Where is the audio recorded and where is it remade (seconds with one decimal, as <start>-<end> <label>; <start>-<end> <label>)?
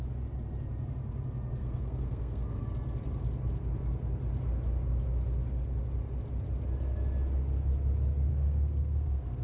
0.0-1.6 recorded; 1.6-2.6 remade; 2.6-8.3 recorded; 8.3-9.4 remade